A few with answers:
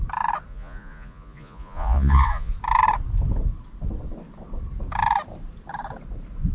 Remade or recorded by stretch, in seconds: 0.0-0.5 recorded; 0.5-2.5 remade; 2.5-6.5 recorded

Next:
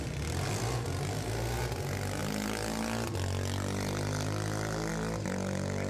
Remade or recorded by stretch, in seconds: 0.0-5.9 recorded